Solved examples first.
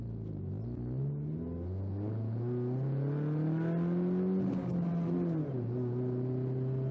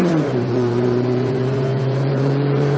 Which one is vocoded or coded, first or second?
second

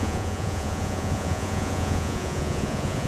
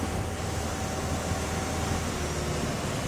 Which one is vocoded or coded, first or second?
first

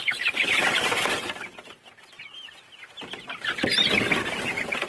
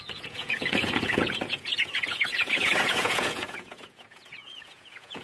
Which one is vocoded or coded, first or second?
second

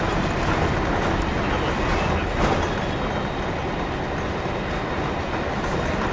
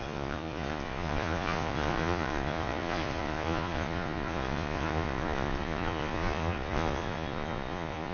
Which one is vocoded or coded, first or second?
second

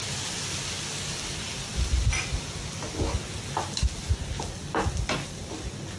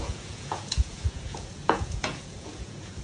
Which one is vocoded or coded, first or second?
second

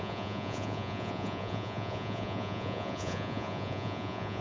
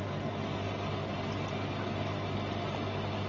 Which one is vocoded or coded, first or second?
first